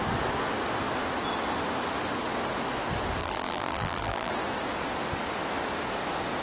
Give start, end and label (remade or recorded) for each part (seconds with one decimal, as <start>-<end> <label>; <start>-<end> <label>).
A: 0.0-3.2 recorded; 3.2-4.3 remade; 4.3-6.4 recorded